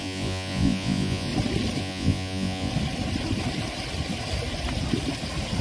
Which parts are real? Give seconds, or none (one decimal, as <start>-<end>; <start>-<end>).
1.3-1.8; 2.7-5.6